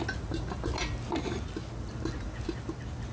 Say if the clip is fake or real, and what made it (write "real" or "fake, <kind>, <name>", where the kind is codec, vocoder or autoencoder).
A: real